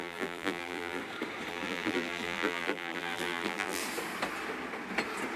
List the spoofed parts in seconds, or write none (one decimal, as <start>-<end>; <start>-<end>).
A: 0.0-1.0; 1.5-3.8